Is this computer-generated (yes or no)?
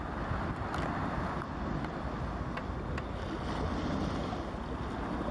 no